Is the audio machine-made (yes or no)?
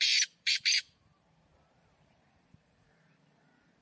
yes